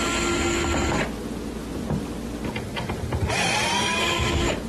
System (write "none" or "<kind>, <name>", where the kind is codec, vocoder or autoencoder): none